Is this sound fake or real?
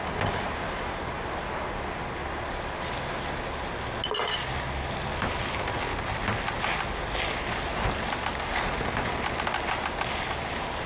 real